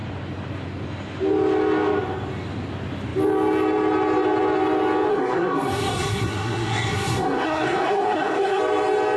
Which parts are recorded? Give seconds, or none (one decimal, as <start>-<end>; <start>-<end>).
0.0-5.1; 8.6-9.2